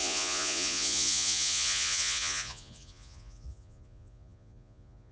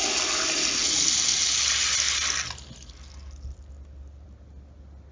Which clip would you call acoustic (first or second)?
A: second